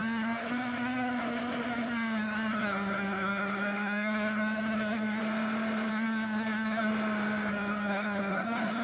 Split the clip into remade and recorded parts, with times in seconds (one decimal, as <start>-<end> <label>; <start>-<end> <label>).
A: 0.0-5.2 remade; 5.2-5.9 recorded; 5.9-6.9 remade; 6.9-7.5 recorded; 7.5-8.8 remade